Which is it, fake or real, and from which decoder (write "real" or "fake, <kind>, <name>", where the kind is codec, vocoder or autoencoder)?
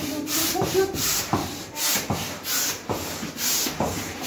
fake, vocoder, BigVGAN v2